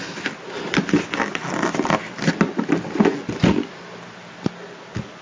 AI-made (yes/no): no